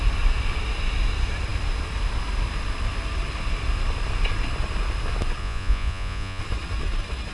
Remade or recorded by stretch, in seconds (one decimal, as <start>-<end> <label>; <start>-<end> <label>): 0.0-5.4 recorded; 5.4-6.4 remade; 6.4-7.3 recorded